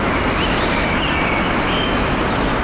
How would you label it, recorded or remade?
recorded